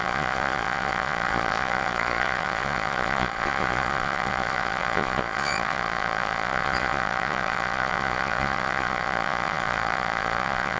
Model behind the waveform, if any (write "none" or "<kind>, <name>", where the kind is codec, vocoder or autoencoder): vocoder, Vocos